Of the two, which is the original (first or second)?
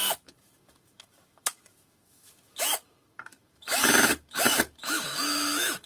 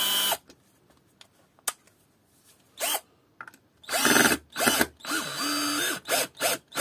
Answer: second